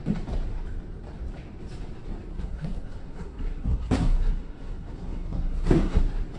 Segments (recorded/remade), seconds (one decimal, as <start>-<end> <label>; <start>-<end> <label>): 0.0-2.3 recorded; 2.3-6.0 remade; 6.0-6.4 recorded